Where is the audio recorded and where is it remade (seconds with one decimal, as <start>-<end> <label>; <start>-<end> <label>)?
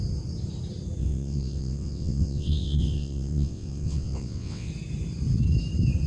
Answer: 0.0-1.0 recorded; 1.0-4.7 remade; 4.7-6.1 recorded